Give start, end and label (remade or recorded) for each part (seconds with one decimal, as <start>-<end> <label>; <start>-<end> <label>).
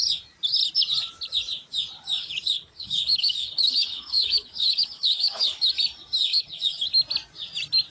0.0-2.2 recorded; 2.2-5.7 remade; 5.7-6.3 recorded; 6.3-6.9 remade; 6.9-7.9 recorded